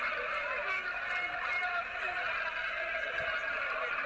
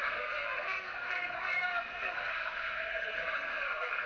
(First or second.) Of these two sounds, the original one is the first